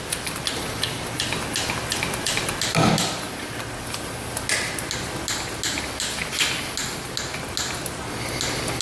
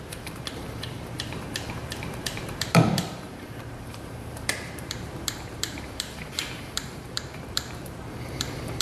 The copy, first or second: second